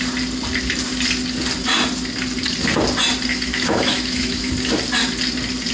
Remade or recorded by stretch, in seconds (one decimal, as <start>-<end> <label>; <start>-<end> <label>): 0.0-3.3 recorded; 3.3-4.5 remade; 4.5-5.7 recorded